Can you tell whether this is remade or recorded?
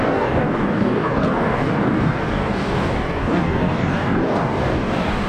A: remade